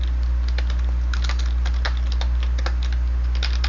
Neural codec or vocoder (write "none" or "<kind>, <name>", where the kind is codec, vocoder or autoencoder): none